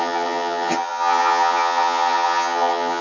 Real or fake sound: fake